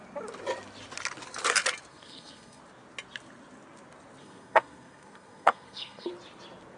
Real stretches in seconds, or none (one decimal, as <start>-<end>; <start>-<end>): 0.0-1.9; 2.6-4.2; 6.1-6.8